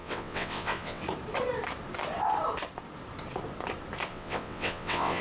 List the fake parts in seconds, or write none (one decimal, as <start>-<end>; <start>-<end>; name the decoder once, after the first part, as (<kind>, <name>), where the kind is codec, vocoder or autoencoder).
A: 0.0-1.0 (vocoder, WaveNeXt); 4.1-5.2